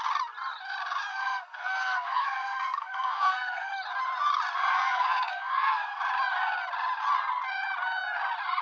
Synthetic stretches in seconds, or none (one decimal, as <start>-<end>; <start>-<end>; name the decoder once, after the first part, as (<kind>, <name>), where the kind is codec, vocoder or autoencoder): 1.1-3.7 (codec, SNAC); 4.7-6.0